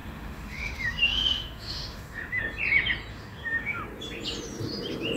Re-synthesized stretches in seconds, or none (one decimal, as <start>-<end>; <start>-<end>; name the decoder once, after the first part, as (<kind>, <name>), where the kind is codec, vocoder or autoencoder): 0.0-2.4 (autoencoder, DAC-VAE); 3.1-3.8